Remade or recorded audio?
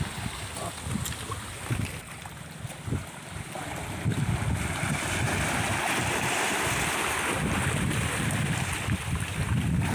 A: recorded